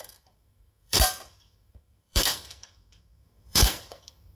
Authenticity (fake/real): fake